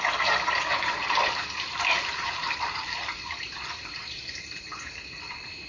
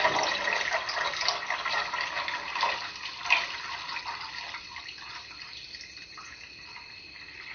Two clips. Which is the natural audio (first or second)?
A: second